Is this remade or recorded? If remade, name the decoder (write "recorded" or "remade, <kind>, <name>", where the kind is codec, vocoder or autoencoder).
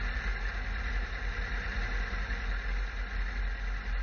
recorded